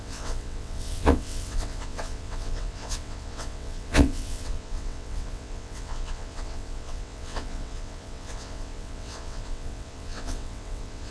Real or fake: fake